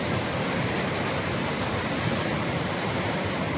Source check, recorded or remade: recorded